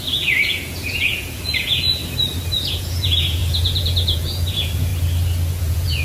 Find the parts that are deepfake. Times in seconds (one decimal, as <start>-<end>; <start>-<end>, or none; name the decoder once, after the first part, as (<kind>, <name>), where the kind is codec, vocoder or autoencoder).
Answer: 0.0-2.0 (vocoder, Vocos); 2.7-4.9; 5.6-6.0